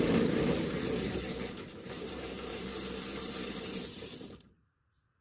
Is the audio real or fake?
fake